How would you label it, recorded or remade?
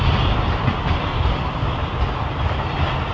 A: recorded